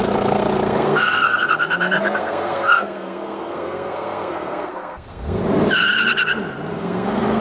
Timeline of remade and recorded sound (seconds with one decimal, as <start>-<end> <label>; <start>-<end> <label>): 0.0-5.4 remade; 5.4-6.7 recorded; 6.7-7.4 remade